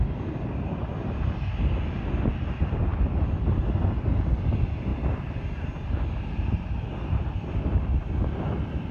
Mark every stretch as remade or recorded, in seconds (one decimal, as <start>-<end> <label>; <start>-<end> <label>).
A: 0.0-8.9 recorded